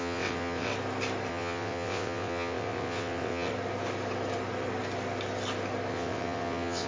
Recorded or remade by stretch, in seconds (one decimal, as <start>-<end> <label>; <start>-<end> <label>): 0.0-0.7 remade; 0.7-1.3 recorded; 1.3-3.5 remade; 3.5-5.9 recorded; 5.9-6.9 remade